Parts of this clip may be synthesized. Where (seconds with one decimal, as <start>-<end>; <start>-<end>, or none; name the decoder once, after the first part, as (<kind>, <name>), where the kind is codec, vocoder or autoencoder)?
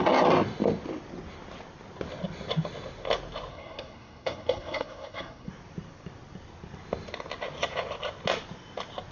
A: 3.5-5.5 (codec, SNAC)